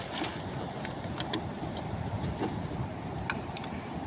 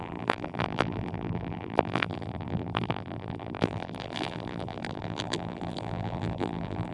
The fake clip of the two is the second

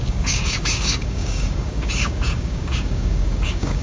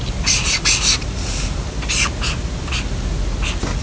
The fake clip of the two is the first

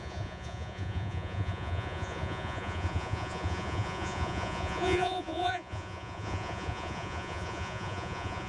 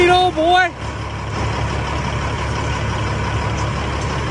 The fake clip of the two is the first